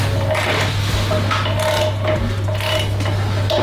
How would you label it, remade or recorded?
recorded